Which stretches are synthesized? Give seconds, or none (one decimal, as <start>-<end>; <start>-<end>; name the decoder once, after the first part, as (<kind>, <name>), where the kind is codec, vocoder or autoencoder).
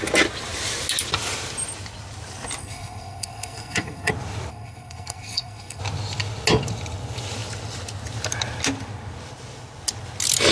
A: 2.6-4.1 (codec, SNAC); 4.5-5.8